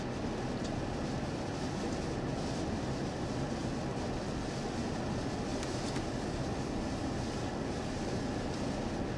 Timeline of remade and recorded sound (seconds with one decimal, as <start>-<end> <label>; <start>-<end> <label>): 0.0-5.5 recorded; 5.5-7.0 remade; 7.0-9.2 recorded